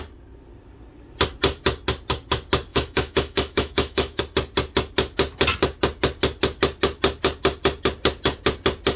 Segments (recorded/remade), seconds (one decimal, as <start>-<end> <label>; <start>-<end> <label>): 0.0-2.7 recorded; 2.7-4.2 remade; 4.2-9.0 recorded